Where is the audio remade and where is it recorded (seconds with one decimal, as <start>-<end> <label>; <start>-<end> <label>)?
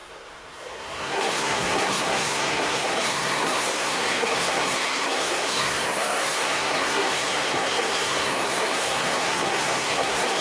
0.0-10.4 remade